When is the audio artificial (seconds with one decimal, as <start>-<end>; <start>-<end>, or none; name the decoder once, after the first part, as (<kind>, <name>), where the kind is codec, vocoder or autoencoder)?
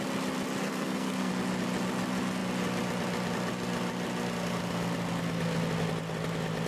0.6-1.3 (codec, SNAC)